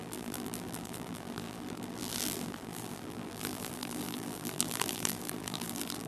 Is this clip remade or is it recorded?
remade